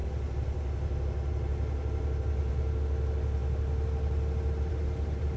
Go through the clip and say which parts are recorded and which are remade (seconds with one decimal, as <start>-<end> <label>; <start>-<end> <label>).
0.0-5.4 recorded